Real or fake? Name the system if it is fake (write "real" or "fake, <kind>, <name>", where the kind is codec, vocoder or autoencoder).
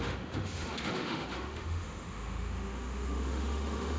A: fake, autoencoder, DAC-VAE